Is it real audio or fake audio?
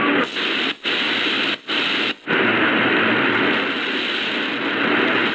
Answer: real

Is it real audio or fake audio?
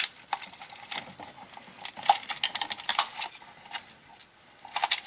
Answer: real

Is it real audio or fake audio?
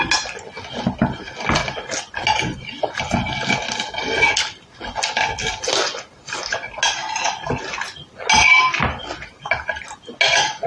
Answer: real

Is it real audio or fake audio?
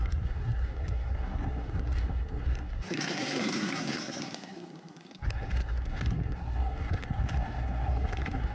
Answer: fake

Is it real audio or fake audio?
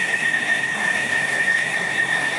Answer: fake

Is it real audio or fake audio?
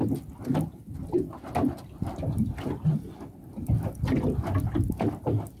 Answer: real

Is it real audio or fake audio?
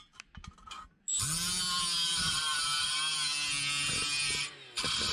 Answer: real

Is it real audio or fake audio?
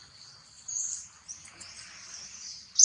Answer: real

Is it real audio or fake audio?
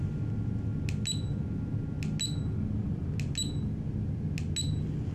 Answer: real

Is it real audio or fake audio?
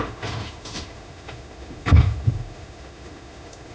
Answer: fake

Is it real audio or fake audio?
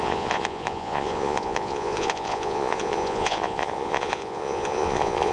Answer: fake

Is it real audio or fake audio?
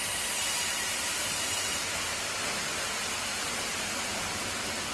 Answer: fake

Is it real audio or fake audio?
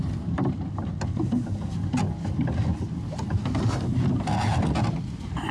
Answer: real